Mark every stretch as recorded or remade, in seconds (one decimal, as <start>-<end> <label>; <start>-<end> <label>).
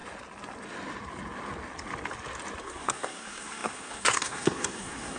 0.0-2.6 recorded; 2.6-5.2 remade